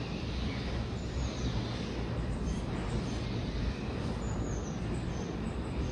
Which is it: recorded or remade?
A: recorded